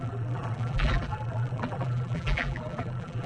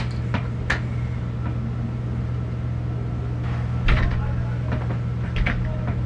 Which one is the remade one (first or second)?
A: first